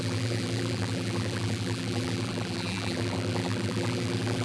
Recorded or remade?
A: remade